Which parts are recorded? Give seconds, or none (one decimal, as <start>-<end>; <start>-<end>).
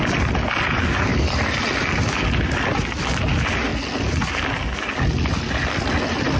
0.0-6.4